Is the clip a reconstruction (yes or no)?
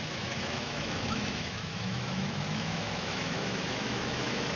yes